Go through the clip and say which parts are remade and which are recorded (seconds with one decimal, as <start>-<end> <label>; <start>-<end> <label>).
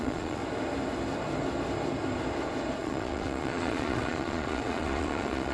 0.0-0.4 remade; 0.4-2.8 recorded; 2.8-5.5 remade